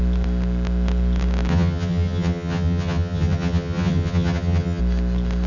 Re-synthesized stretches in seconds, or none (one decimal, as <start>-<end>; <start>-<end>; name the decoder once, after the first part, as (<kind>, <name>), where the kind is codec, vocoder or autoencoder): 1.5-4.8 (vocoder, HiFi-GAN)